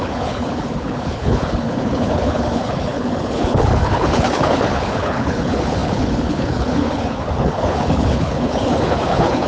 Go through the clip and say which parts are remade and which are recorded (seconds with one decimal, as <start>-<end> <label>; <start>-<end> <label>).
0.0-9.5 remade